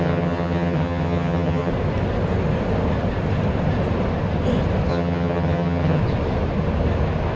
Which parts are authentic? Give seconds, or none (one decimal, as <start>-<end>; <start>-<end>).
1.7-4.9; 6.0-7.4